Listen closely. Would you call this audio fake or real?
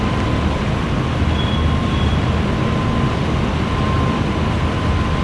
real